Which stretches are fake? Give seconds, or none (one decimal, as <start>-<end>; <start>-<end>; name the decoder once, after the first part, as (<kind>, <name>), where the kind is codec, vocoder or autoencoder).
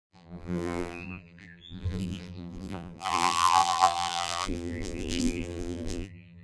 0.0-6.4 (vocoder, BigVGAN v2)